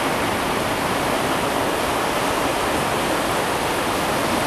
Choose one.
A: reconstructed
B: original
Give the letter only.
B